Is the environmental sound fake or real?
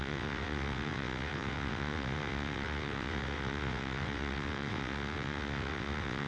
fake